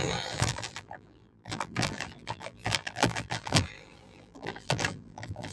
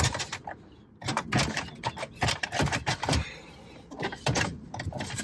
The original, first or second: second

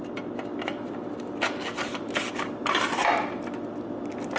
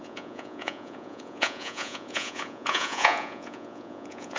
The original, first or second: first